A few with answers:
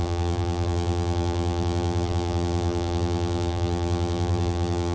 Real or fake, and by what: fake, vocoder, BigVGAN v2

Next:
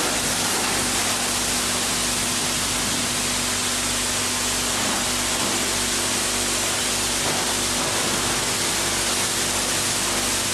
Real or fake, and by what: real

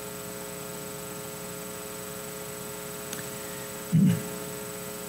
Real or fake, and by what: real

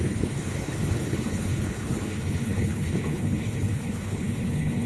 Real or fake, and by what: fake, codec, HILCodec